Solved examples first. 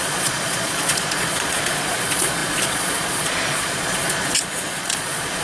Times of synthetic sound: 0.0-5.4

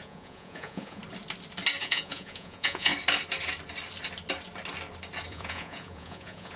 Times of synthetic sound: 0.0-1.0; 1.8-2.9; 5.3-6.6

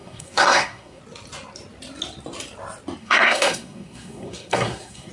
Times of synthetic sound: 0.0-1.0; 3.0-5.1

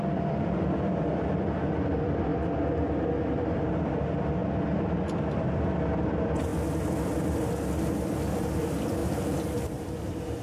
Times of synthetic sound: 0.0-2.3; 3.5-4.4; 5.4-6.5; 8.4-10.4